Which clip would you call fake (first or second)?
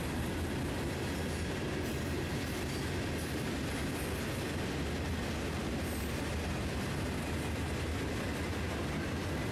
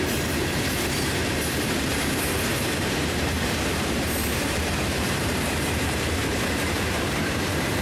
second